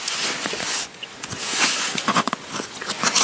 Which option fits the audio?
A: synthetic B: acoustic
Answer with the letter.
A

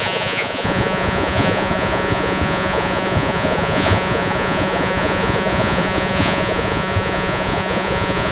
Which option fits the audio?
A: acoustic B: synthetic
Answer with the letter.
B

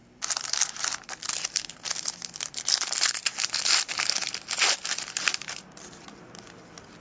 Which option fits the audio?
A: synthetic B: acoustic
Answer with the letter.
B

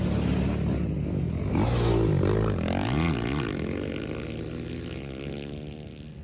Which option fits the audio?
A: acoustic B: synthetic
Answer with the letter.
A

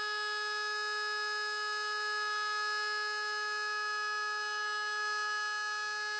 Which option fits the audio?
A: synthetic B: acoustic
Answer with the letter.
B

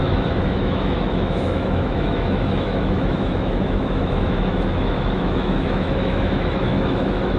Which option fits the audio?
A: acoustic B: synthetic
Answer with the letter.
B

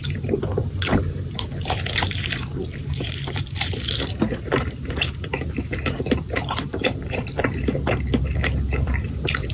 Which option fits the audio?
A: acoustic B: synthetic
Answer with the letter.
B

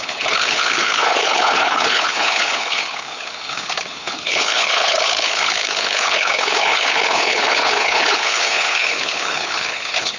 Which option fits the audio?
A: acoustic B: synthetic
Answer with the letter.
B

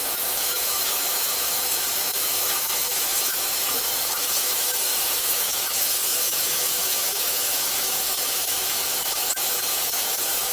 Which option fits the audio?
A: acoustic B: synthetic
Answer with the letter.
B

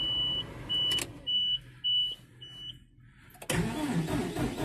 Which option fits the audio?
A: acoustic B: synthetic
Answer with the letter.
A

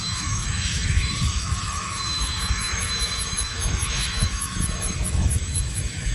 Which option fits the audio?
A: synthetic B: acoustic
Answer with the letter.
A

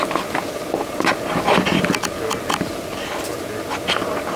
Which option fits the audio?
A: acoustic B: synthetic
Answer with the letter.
A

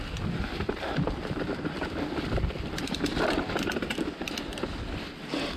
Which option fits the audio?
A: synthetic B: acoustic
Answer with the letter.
B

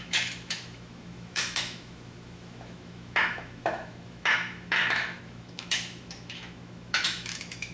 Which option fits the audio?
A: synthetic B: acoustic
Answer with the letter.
A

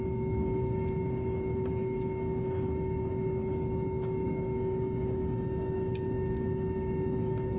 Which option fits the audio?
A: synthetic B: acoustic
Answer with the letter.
A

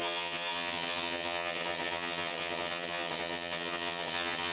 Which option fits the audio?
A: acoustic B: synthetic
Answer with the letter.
B